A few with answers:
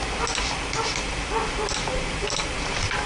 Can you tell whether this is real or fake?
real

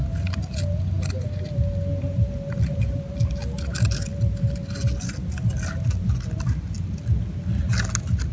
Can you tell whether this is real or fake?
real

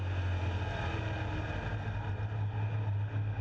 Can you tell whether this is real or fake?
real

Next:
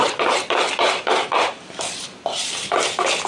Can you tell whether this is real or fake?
real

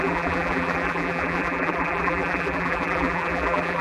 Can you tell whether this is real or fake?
fake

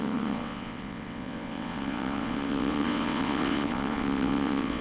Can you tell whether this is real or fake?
fake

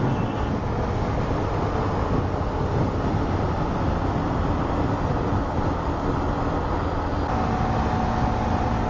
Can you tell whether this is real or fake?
real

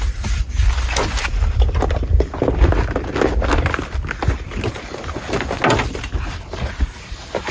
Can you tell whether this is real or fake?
real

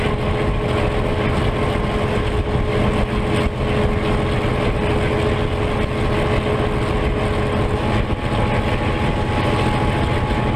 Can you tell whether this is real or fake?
real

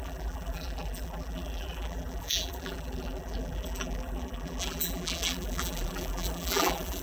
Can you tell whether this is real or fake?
fake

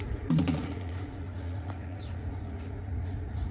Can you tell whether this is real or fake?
fake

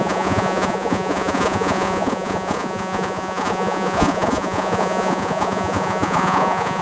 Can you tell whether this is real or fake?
fake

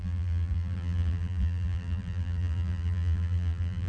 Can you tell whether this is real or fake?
fake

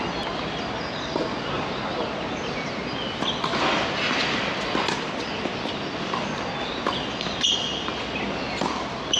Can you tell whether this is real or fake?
real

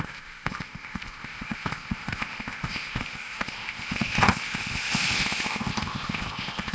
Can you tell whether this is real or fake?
fake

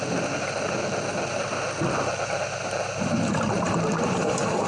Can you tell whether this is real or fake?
real